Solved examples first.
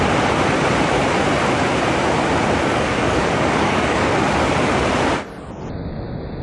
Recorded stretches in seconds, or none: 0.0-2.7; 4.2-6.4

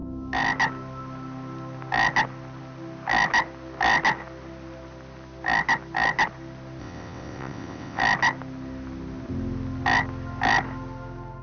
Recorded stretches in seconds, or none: 0.0-6.8; 8.0-11.4

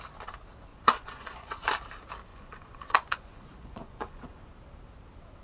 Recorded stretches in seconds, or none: 0.0-0.7; 1.5-2.3; 4.5-5.4